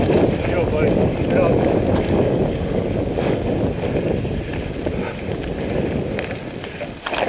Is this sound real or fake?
real